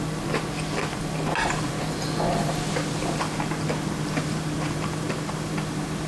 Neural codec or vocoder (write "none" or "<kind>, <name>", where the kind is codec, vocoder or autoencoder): none